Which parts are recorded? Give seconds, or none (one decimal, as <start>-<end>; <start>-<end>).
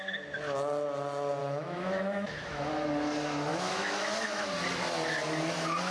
0.0-1.4; 2.7-3.5; 4.5-5.9